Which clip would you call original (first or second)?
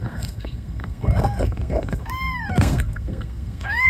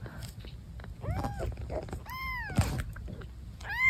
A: second